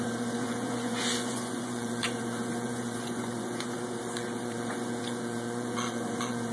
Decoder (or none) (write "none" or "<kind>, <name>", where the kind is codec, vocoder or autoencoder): vocoder, Vocos